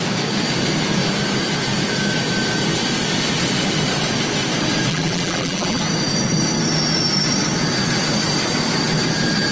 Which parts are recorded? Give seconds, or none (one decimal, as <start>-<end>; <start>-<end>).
0.0-4.9; 5.8-9.5

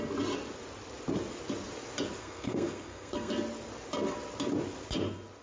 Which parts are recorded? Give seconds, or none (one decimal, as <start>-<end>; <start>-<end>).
0.0-2.2; 3.3-5.4